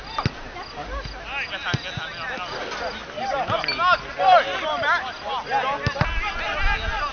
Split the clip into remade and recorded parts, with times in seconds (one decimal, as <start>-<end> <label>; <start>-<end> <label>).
0.0-7.1 recorded